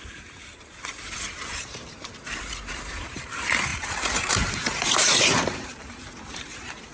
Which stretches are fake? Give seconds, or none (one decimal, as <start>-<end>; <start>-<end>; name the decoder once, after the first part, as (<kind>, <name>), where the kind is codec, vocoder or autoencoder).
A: 0.0-6.9 (vocoder, BigVGAN v2)